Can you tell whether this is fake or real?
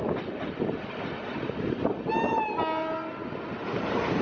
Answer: real